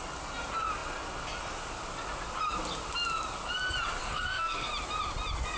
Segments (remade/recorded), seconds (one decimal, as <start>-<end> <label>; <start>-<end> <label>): 0.0-4.0 recorded; 4.0-4.7 remade; 4.7-5.6 recorded